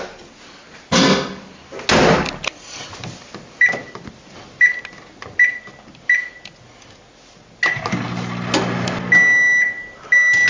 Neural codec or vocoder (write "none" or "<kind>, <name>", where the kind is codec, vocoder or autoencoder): none